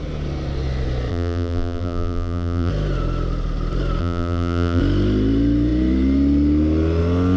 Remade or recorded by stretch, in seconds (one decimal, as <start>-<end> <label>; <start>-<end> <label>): 0.0-1.1 recorded; 1.1-2.7 remade; 2.7-4.0 recorded; 4.0-4.8 remade; 4.8-7.4 recorded